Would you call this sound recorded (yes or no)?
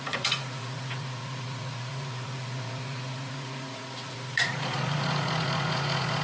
no